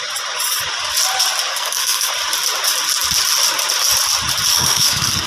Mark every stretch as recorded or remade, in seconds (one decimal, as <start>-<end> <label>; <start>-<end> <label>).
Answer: 0.0-1.5 recorded; 1.5-2.1 remade; 2.1-4.5 recorded; 4.5-5.3 remade